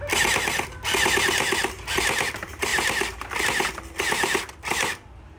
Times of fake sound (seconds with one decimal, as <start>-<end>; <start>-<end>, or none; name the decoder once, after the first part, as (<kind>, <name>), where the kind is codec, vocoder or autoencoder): none